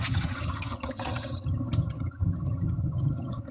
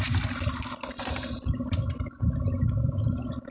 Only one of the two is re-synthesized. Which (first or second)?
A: first